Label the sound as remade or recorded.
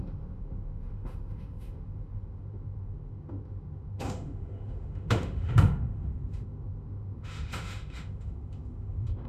remade